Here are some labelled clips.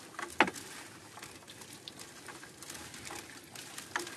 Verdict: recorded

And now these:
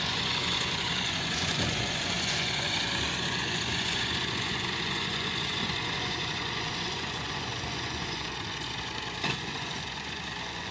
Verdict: remade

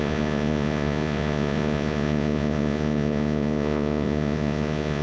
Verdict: remade